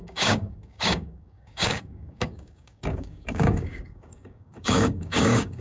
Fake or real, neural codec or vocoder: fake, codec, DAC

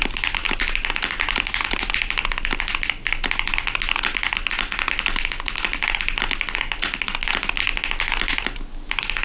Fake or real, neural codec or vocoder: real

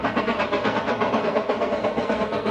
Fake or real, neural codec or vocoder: fake, codec, SNAC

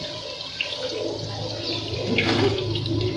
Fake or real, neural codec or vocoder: real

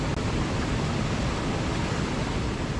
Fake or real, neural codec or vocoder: real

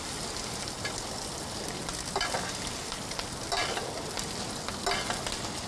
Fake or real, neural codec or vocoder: real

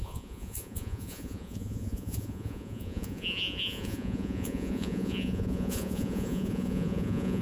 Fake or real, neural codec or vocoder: fake, vocoder, Vocos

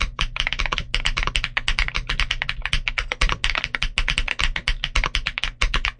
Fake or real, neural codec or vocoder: real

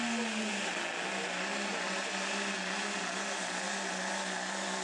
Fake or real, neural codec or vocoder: real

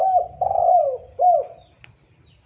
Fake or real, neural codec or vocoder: real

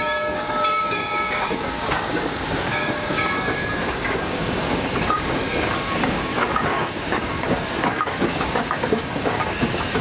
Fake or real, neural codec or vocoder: fake, codec, DAC